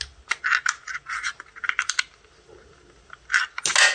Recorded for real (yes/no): yes